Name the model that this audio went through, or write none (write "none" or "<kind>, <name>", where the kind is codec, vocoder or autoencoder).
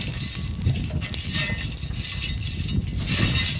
none